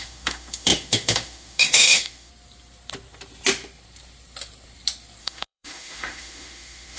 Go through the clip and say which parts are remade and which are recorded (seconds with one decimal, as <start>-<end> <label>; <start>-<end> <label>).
0.0-2.3 remade; 2.3-5.2 recorded; 5.2-7.0 remade